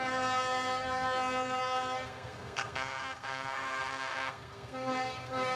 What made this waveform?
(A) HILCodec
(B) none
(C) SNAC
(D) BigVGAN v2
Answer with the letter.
C